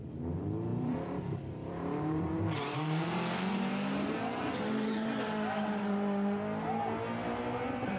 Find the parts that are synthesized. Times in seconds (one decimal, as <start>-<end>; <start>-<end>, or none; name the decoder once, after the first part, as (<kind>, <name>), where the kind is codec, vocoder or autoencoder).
0.7-5.2 (vocoder, BigVGAN v2)